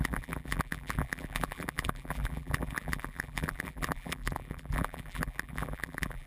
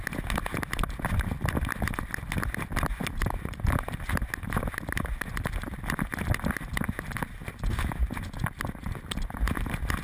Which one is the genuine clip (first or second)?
second